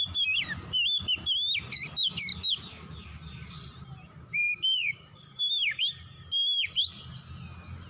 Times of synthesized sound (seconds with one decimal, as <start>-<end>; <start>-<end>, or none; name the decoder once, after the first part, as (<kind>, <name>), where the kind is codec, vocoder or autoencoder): 2.3-5.4 (vocoder, BigVGAN v2)